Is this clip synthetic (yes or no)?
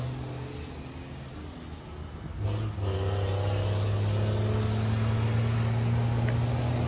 no